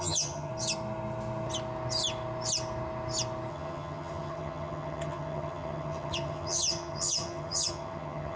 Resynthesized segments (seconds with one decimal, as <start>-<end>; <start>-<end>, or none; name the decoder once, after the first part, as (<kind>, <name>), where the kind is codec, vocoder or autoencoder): 0.0-0.5 (vocoder, HiFi-GAN); 3.5-8.4

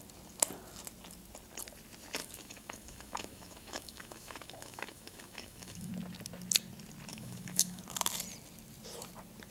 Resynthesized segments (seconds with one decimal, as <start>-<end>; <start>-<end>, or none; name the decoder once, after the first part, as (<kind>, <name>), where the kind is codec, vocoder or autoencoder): 2.2-5.9 (autoencoder, DAC-VAE); 7.1-7.8

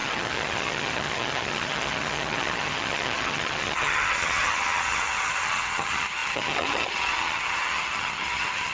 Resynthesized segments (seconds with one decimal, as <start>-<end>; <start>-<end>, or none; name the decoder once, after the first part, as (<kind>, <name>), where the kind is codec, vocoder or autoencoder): 0.0-8.7 (vocoder, HiFi-GAN)

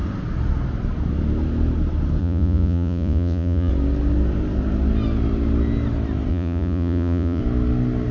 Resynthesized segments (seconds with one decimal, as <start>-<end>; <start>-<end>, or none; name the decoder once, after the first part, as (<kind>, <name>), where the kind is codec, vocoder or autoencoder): 2.2-3.7 (vocoder, Vocos); 6.3-7.4

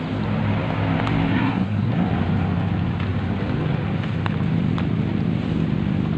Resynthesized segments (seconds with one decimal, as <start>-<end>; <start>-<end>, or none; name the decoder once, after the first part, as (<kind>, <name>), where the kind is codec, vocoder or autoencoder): 1.3-2.1 (codec, SNAC)

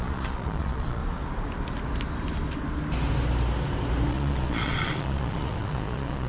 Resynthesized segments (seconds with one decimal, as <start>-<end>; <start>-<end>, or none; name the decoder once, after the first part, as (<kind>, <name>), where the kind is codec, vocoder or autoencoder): 0.0-1.0 (vocoder, Vocos); 4.1-6.3

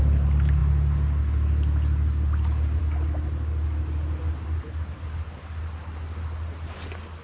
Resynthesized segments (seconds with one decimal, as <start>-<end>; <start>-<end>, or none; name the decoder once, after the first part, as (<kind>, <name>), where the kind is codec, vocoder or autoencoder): none

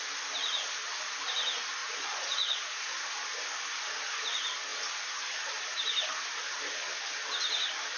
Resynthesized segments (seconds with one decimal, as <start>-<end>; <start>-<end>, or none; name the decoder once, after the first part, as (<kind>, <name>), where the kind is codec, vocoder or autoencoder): 1.8-2.8 (vocoder, Vocos)